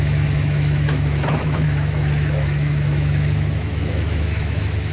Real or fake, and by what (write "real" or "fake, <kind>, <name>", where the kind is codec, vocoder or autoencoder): fake, autoencoder, DAC-VAE